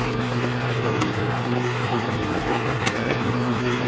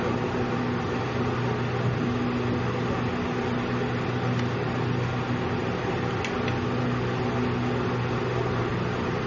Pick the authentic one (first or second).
second